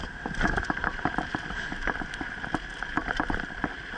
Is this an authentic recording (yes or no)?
yes